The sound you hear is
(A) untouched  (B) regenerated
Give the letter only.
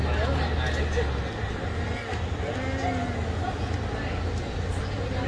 A